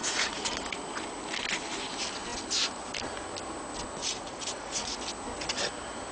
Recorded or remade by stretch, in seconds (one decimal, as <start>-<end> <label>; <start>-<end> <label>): 0.0-0.6 remade; 0.6-4.0 recorded; 4.0-5.0 remade; 5.0-6.1 recorded